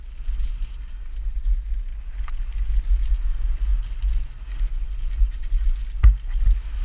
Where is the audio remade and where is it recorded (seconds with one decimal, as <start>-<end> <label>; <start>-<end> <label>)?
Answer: 0.0-1.9 recorded; 1.9-2.8 remade; 2.8-6.8 recorded